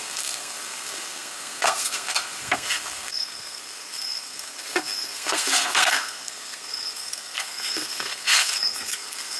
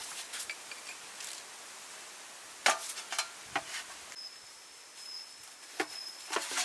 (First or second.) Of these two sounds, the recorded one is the second